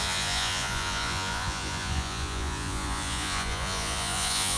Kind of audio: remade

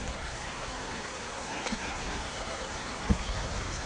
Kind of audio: remade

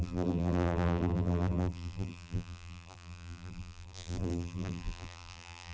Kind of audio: remade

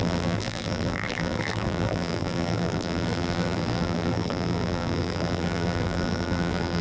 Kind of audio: remade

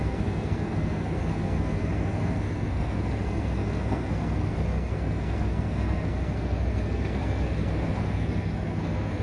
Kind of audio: remade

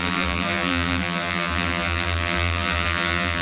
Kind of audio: remade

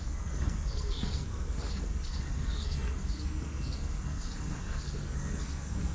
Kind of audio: remade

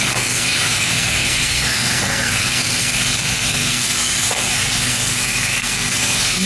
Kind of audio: remade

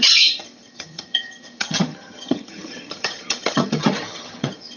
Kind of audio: remade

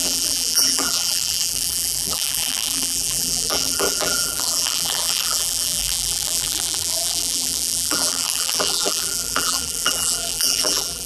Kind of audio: remade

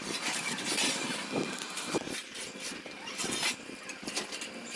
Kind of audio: recorded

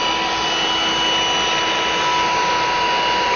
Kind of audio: recorded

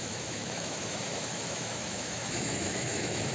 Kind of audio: remade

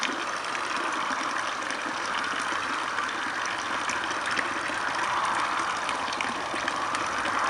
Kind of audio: recorded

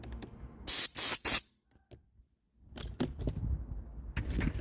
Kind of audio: recorded